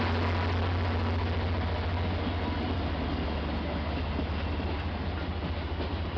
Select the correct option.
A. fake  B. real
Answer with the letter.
B